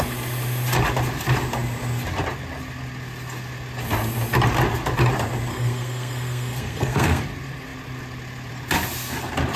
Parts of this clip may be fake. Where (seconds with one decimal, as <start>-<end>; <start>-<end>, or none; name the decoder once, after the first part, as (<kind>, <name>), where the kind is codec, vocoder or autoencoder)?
5.5-7.2 (codec, SNAC)